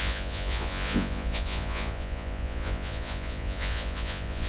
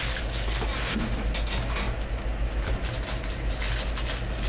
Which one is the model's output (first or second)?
first